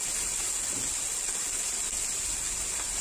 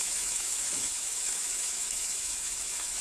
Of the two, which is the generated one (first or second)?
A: second